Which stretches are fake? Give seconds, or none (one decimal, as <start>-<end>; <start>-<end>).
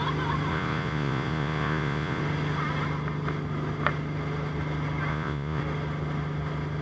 0.5-2.2; 5.1-5.6